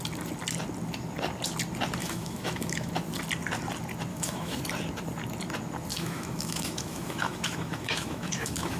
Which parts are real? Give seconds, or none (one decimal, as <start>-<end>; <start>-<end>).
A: 0.0-2.0; 2.9-4.1; 4.6-5.9